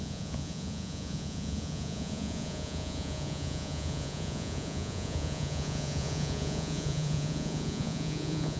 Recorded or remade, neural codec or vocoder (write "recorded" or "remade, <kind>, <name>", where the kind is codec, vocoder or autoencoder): remade, vocoder, Vocos